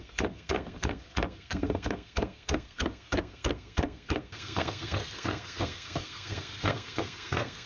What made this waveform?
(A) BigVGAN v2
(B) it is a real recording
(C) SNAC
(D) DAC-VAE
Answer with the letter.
C